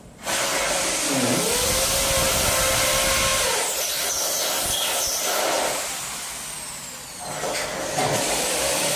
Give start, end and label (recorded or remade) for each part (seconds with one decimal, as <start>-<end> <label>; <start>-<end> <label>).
0.0-9.0 recorded